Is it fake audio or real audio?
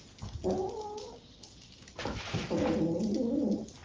real